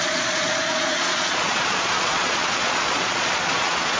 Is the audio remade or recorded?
remade